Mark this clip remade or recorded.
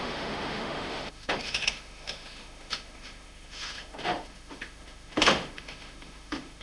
remade